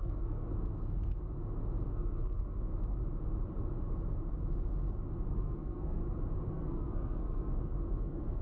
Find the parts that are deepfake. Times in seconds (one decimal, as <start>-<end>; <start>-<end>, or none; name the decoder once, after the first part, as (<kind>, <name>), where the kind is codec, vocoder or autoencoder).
0.0-0.5 (codec, SNAC); 1.9-2.7; 5.3-6.0; 6.5-8.4